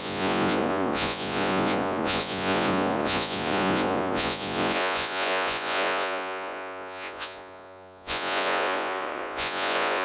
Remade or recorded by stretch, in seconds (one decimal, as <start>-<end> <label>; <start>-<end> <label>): 0.0-10.0 remade